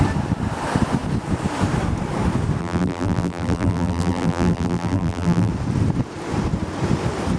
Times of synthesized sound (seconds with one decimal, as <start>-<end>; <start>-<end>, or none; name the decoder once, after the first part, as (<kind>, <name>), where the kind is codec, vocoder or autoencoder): 2.6-5.5 (vocoder, BigVGAN v2)